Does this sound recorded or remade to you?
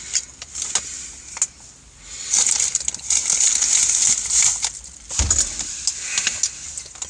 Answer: recorded